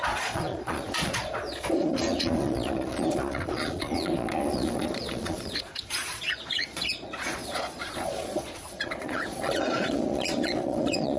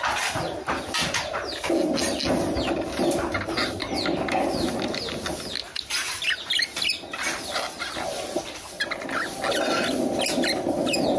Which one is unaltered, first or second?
second